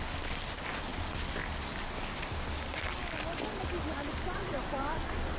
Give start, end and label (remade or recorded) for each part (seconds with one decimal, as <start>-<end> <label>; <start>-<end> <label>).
0.0-5.4 recorded